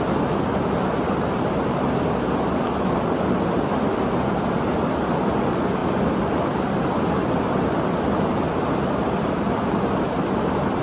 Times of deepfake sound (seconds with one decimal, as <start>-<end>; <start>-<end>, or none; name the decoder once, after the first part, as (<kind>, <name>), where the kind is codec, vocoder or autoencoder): none